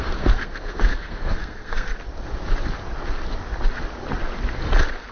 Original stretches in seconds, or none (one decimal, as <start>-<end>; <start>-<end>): 1.9-5.1